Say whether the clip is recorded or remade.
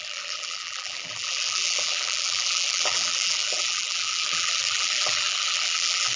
remade